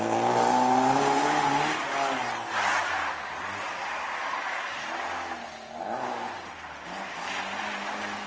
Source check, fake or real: real